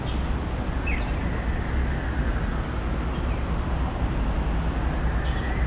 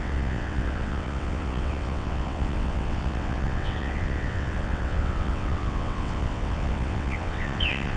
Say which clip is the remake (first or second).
second